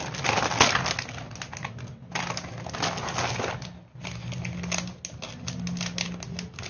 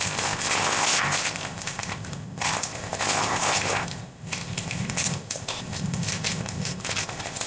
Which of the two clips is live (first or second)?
first